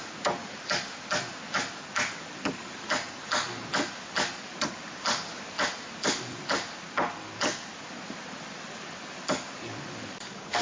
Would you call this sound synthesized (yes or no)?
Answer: no